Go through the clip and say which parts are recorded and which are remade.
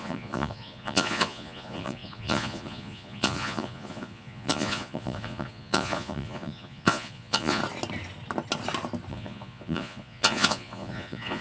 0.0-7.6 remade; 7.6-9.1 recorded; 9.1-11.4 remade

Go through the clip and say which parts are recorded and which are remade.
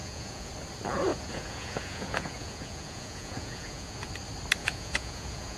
0.0-0.5 remade; 0.5-1.1 recorded; 1.1-4.1 remade; 4.1-4.6 recorded; 4.6-5.6 remade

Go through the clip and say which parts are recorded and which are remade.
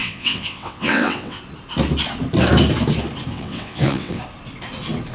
0.0-1.4 remade; 1.4-3.3 recorded; 3.3-4.2 remade; 4.2-5.1 recorded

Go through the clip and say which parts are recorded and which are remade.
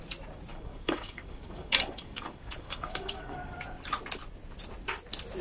0.0-0.5 recorded; 0.5-3.6 remade; 3.6-5.4 recorded